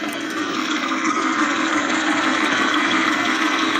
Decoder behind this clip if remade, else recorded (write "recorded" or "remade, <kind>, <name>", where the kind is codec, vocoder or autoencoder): remade, codec, SNAC